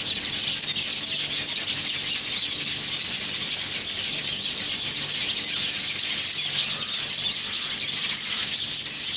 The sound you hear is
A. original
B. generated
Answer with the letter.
A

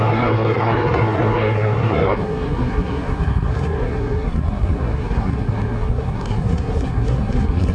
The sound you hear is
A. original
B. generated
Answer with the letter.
B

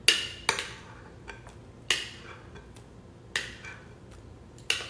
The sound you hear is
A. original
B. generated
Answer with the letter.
A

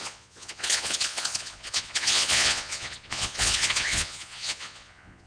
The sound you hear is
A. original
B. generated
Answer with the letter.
B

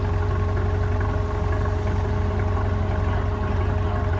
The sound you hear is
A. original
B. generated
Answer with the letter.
A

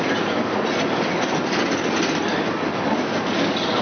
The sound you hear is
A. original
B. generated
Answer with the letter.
A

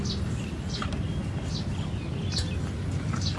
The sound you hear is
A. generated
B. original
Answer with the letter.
B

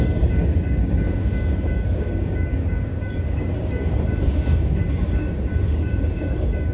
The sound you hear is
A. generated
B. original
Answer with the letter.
A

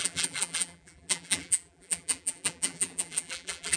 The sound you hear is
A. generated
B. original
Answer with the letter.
A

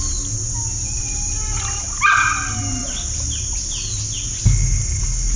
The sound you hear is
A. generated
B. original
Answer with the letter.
B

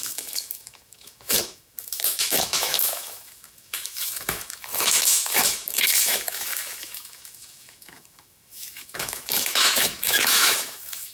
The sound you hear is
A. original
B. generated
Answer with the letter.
B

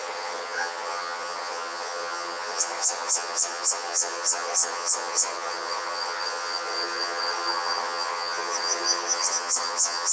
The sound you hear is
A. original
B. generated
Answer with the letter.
B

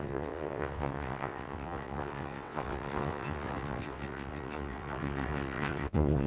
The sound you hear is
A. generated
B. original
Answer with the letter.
A